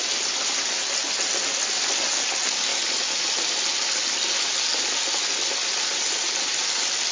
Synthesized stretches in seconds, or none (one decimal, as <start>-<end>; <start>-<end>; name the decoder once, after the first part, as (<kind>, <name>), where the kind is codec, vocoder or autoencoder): none

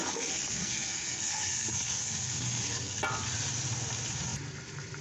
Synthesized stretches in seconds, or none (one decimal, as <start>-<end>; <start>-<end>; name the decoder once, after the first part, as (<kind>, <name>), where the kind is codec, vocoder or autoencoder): 0.0-3.0 (codec, SNAC)

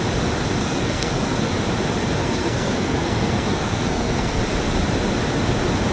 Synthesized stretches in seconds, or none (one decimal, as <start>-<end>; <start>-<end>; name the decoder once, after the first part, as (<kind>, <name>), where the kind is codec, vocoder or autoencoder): 0.6-1.5 (codec, SNAC); 2.2-4.4

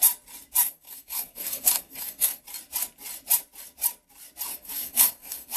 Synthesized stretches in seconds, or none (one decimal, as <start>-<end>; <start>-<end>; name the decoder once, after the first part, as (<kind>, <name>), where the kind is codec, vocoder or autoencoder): 0.6-2.4 (codec, SNAC); 4.5-5.6

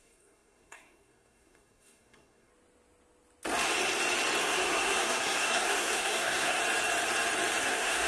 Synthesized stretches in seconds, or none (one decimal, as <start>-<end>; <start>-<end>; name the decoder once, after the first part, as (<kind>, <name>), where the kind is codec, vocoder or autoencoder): 0.0-2.5 (codec, SNAC); 4.4-6.6; 7.6-8.1